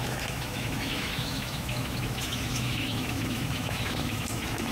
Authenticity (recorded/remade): remade